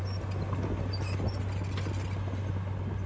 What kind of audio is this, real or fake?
real